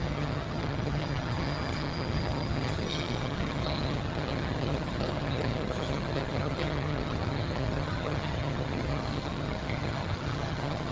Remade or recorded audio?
remade